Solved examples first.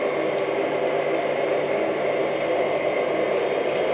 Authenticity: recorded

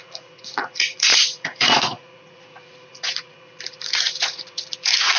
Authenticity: remade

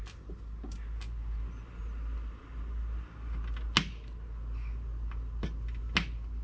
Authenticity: recorded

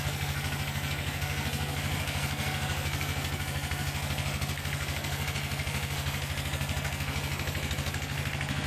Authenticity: remade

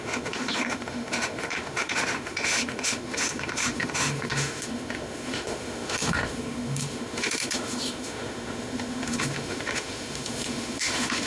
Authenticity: remade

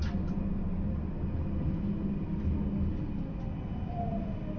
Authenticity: recorded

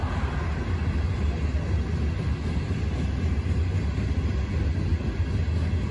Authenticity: recorded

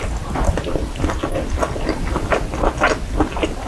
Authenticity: recorded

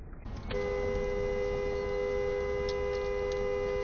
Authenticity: recorded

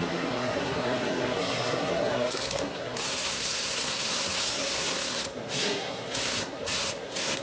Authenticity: remade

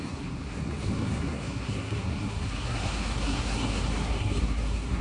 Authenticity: remade